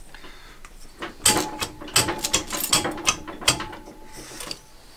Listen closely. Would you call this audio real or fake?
real